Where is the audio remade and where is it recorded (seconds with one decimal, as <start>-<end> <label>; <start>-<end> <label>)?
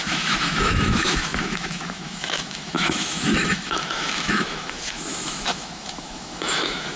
0.0-7.0 remade